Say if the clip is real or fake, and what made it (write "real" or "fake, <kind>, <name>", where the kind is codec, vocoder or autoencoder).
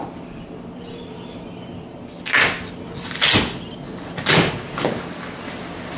real